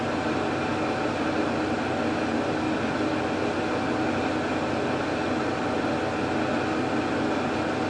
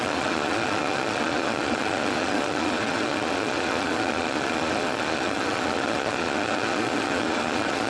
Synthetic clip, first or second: second